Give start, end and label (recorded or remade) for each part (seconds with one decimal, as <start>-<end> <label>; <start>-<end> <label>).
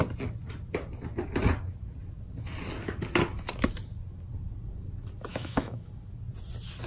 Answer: 0.0-5.3 recorded; 5.3-5.9 remade; 5.9-6.9 recorded